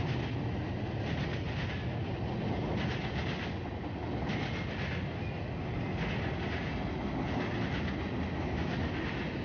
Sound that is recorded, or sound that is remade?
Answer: recorded